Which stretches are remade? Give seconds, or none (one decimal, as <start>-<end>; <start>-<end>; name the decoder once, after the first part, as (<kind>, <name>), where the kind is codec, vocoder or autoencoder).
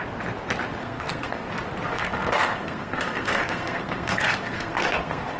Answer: 0.8-1.5 (codec, SNAC); 1.9-5.4